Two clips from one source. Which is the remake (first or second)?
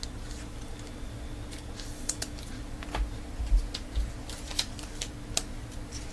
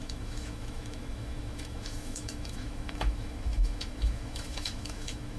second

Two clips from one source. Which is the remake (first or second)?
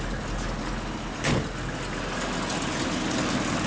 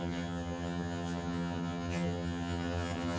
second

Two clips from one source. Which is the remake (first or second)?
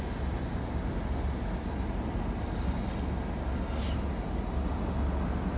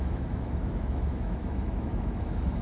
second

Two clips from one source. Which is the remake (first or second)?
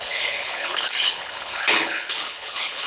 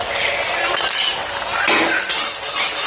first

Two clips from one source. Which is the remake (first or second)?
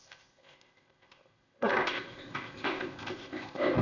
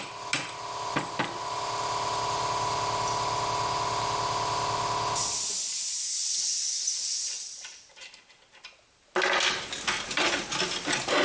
first